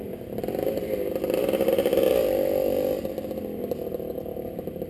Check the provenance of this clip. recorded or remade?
recorded